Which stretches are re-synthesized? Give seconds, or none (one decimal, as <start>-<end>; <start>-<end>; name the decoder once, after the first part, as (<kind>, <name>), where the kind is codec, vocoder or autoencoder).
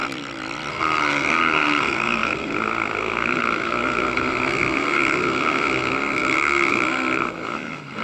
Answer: 0.7-8.0 (codec, SNAC)